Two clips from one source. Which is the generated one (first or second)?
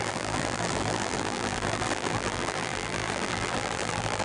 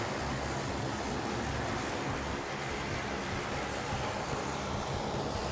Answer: first